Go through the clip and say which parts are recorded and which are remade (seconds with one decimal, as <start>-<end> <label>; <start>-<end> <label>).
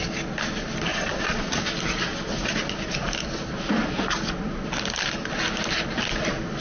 0.0-0.9 recorded; 0.9-1.5 remade; 1.5-6.6 recorded